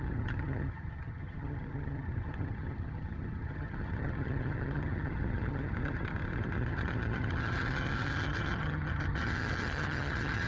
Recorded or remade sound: remade